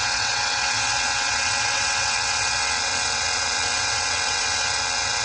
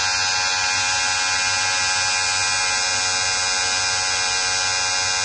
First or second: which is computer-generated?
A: first